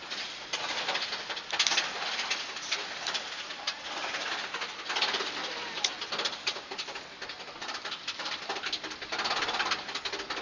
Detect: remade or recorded recorded